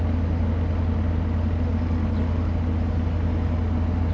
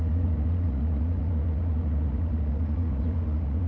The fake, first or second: second